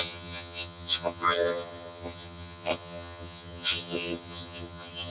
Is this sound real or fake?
fake